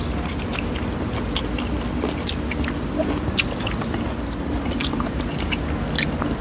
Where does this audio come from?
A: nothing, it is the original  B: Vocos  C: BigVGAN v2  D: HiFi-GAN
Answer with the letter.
A